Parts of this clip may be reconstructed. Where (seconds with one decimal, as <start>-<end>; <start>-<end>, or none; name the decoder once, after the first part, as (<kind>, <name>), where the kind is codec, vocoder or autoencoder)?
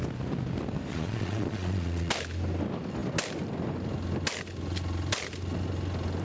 0.9-2.1 (vocoder, Vocos)